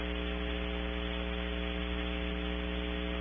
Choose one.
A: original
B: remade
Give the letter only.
A